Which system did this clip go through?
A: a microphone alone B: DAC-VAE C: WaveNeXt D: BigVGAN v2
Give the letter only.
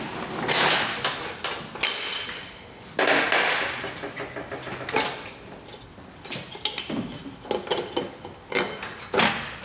A